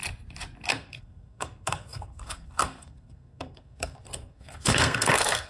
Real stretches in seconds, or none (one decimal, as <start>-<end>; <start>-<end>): 0.0-0.7